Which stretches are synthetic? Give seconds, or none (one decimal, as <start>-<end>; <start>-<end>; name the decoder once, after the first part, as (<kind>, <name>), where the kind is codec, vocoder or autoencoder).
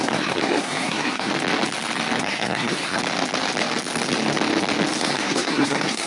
0.0-1.3 (codec, SNAC); 2.2-3.0; 5.0-6.1